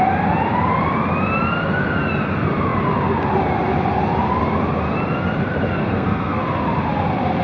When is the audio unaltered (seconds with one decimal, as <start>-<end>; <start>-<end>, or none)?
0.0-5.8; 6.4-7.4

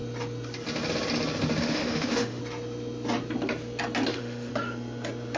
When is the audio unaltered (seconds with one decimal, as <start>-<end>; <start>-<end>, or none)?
0.0-1.6; 2.4-4.1; 4.5-5.4

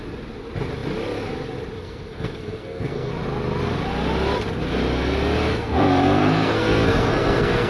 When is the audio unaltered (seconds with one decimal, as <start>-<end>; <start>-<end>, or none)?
0.0-1.8; 3.1-5.5

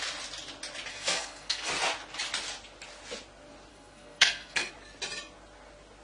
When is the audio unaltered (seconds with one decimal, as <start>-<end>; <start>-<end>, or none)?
0.0-0.9; 1.7-3.7; 4.7-6.0

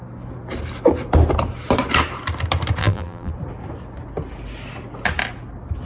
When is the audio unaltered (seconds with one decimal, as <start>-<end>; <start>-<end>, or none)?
0.0-2.8; 3.3-5.8

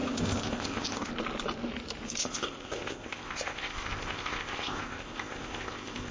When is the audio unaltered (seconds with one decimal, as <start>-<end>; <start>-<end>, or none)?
1.1-2.2